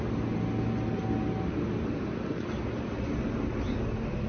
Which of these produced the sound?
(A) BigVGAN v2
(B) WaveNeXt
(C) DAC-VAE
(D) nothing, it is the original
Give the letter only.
D